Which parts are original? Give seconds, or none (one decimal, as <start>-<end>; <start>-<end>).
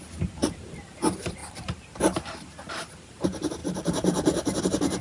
none